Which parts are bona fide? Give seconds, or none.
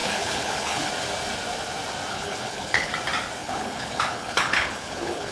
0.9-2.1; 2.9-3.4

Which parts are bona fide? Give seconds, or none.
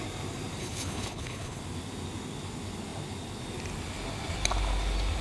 0.0-0.6; 1.6-5.2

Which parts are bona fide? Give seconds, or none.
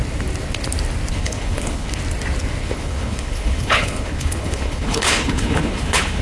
0.0-1.1; 2.0-2.6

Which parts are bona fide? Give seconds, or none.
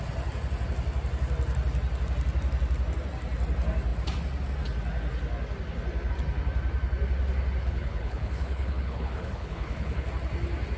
0.0-7.6; 10.1-10.8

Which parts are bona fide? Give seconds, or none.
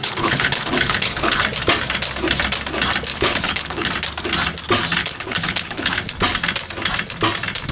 1.4-3.1; 3.9-5.0; 5.9-7.7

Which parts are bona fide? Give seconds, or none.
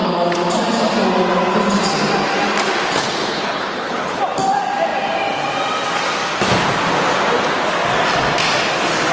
0.0-3.2; 4.2-9.1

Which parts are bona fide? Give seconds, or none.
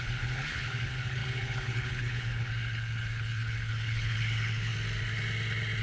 4.7-5.8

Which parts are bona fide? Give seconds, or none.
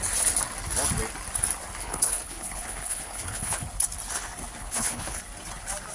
0.0-1.8; 3.6-4.6; 5.2-5.9